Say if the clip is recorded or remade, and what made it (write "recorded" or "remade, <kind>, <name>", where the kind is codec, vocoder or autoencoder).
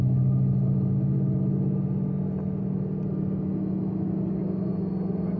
recorded